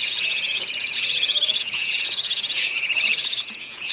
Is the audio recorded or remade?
remade